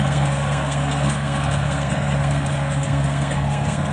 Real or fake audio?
fake